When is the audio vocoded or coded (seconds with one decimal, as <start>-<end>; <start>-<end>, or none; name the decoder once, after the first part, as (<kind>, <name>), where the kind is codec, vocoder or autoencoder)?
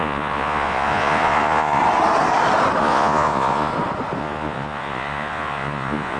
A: 0.0-1.8 (vocoder, Vocos); 2.8-3.7; 4.2-6.2